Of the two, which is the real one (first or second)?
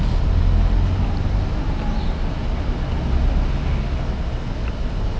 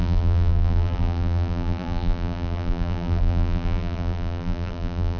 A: first